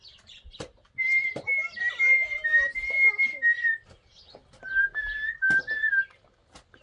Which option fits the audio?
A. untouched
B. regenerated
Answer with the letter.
A